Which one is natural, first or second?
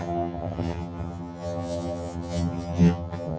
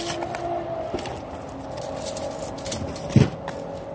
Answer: second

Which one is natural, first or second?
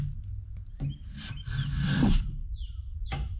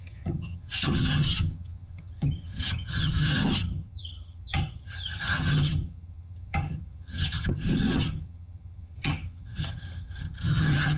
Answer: first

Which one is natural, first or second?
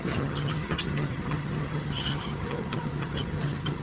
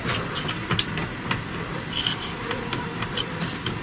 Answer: second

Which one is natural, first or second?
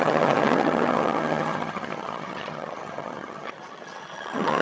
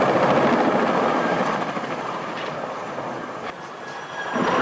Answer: second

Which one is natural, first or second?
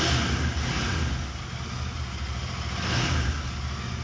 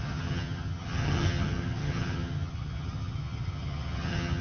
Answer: first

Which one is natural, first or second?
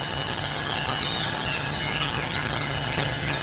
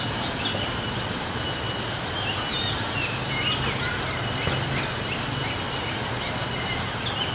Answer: second